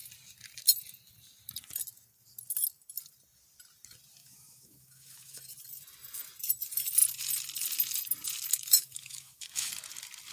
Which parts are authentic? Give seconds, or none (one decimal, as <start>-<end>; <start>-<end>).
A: 0.0-4.2; 5.4-8.5; 9.7-10.3